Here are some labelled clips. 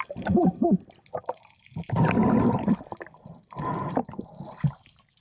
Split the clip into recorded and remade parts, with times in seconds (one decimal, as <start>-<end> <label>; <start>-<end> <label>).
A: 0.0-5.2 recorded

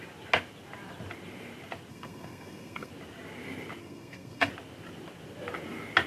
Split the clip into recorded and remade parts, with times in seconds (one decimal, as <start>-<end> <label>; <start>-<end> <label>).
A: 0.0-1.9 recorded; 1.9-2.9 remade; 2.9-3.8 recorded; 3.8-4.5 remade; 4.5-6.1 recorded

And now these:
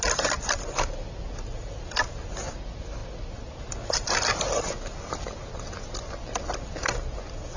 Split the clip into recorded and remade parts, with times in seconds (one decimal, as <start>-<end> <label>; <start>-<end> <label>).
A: 0.0-7.6 recorded